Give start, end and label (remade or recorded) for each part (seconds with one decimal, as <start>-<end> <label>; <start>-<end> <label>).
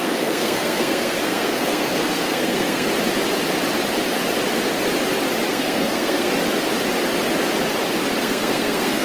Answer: 0.0-2.9 remade; 2.9-5.5 recorded; 5.5-6.3 remade; 6.3-8.2 recorded; 8.2-9.0 remade